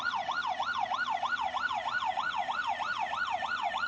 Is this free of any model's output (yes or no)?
no